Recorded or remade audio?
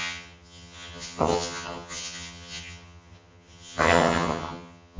remade